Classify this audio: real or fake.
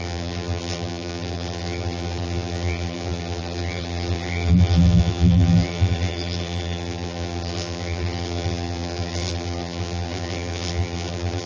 fake